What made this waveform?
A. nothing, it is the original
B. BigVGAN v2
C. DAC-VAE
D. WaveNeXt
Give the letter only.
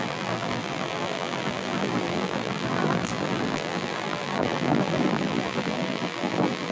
B